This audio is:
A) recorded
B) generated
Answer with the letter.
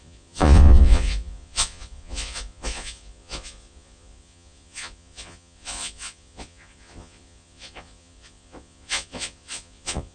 B